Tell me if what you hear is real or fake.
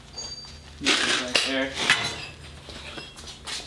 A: real